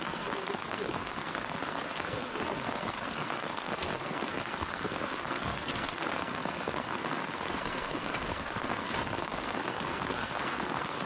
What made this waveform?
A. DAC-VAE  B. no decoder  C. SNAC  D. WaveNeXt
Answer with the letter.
C